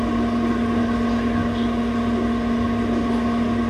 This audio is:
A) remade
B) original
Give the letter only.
B